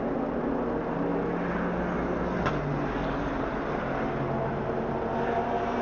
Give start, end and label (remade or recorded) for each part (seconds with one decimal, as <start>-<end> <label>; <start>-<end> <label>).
0.0-5.8 recorded